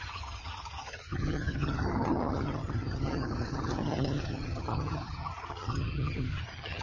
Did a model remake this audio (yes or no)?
yes